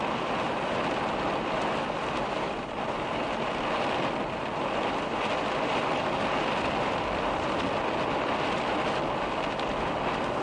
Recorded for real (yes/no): yes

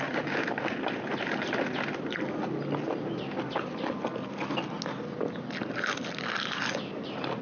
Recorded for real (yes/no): yes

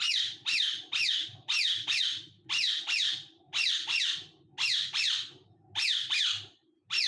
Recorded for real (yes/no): yes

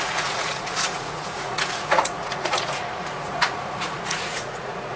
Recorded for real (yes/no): no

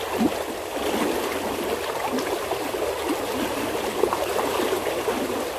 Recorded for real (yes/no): yes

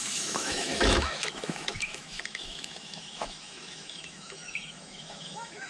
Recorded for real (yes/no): no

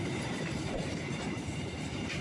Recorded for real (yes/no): no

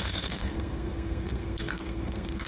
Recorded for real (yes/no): no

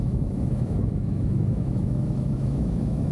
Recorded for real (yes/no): no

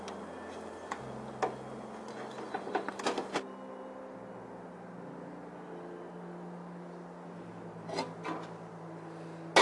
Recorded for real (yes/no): yes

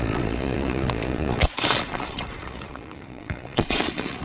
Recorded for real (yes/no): no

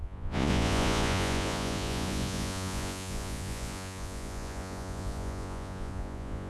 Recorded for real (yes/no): no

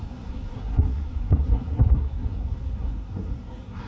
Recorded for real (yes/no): no